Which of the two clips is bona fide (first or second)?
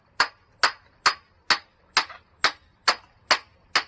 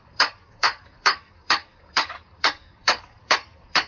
first